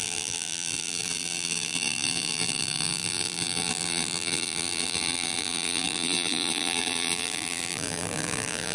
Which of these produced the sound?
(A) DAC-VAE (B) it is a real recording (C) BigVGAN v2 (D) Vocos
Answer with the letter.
C